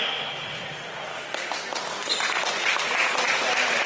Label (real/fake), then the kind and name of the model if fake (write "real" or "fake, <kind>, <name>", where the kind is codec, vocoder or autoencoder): real